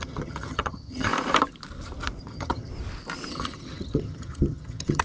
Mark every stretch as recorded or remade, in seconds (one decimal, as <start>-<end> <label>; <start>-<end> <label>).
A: 0.0-1.1 remade; 1.1-2.2 recorded; 2.2-2.7 remade; 2.7-3.3 recorded; 3.3-5.0 remade